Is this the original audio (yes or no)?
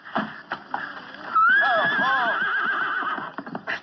yes